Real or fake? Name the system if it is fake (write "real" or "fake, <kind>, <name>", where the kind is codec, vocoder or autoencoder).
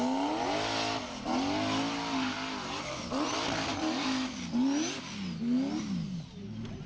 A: real